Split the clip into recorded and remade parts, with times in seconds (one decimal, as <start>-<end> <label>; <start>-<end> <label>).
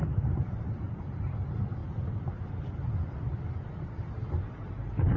0.0-5.2 recorded